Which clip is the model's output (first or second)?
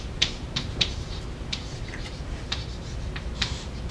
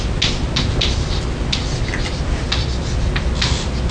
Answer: first